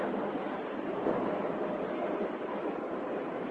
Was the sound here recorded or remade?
recorded